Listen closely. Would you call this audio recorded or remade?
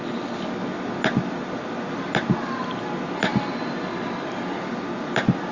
recorded